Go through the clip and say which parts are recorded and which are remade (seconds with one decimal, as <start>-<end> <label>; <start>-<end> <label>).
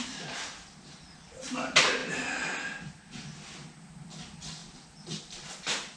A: 0.0-6.0 recorded